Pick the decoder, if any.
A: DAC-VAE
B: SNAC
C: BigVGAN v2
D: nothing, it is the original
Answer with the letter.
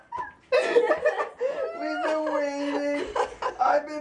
D